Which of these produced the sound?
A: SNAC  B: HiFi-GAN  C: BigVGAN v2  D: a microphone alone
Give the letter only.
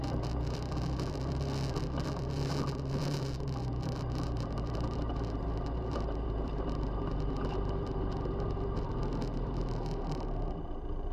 C